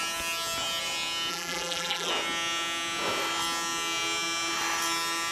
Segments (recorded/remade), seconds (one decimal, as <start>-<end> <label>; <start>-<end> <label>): 0.0-1.3 recorded; 1.3-2.1 remade; 2.1-5.3 recorded